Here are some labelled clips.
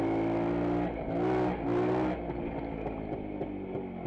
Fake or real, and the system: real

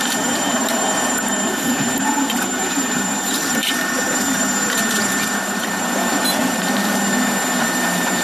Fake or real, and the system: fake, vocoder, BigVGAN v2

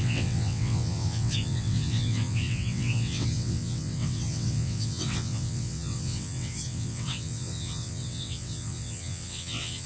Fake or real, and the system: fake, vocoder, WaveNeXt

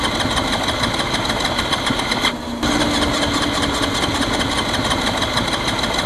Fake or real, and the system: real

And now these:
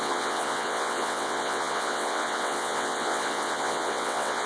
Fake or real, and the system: fake, vocoder, WaveNeXt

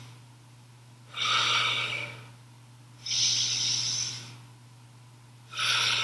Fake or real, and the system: real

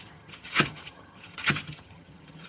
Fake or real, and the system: fake, vocoder, HiFi-GAN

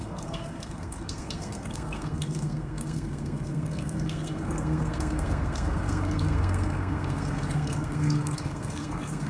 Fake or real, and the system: fake, codec, SNAC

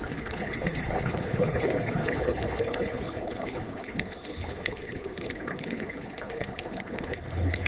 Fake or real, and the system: fake, codec, HILCodec